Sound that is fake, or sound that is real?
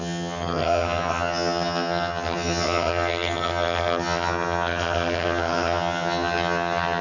fake